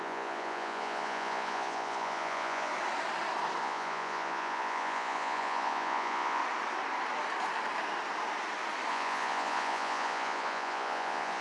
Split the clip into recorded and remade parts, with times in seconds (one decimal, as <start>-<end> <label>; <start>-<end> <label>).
0.0-2.7 remade; 2.7-3.6 recorded; 3.6-6.4 remade; 6.4-8.9 recorded; 8.9-11.4 remade